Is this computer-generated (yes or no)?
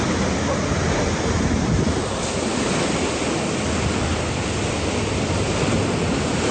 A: no